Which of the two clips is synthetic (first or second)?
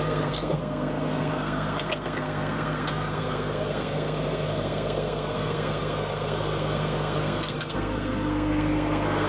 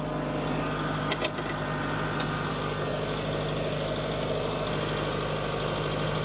first